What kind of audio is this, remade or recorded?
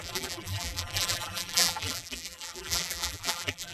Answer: remade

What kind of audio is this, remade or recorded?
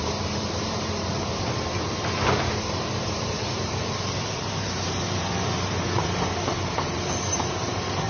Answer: remade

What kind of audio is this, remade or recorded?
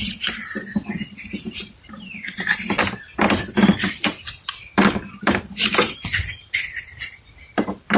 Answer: remade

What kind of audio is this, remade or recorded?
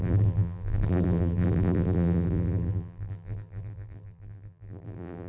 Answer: remade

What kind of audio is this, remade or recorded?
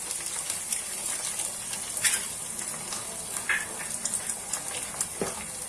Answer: recorded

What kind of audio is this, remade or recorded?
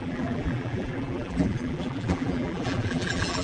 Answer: remade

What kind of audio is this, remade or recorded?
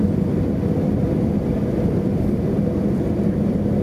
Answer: remade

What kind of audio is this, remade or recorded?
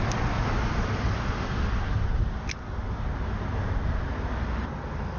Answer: recorded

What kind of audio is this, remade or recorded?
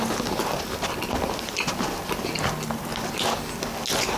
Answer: recorded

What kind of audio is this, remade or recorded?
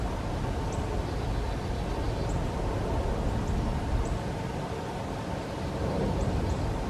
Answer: recorded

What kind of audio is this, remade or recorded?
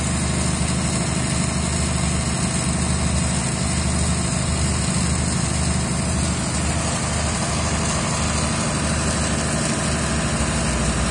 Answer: recorded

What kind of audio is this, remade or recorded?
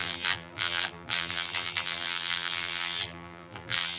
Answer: remade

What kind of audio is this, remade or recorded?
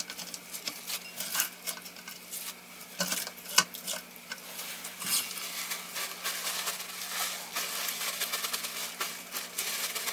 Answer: recorded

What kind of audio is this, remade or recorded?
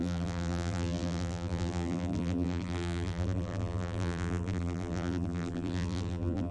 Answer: remade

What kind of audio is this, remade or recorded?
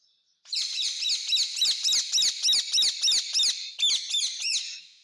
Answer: recorded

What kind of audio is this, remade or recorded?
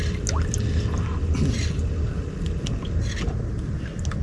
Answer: recorded